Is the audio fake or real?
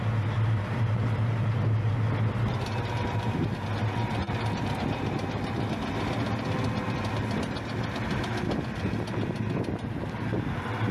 real